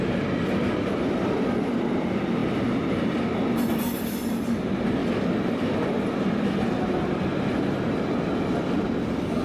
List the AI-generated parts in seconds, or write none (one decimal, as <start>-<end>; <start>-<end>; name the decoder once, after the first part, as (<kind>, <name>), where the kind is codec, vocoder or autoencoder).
none